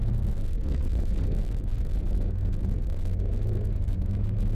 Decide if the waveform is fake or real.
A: fake